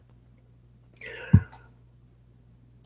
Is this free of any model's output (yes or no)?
yes